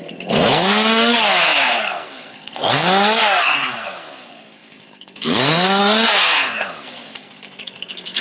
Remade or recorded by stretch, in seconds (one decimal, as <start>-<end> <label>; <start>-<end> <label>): 0.0-8.2 remade